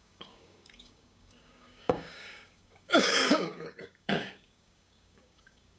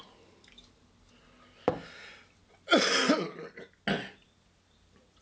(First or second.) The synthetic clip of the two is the first